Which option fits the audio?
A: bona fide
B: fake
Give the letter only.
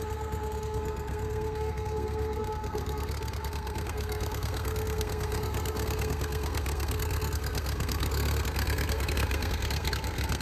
B